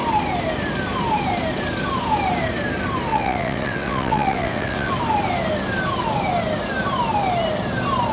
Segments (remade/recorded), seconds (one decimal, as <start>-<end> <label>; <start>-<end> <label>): 0.0-3.1 recorded; 3.1-4.9 remade; 4.9-8.1 recorded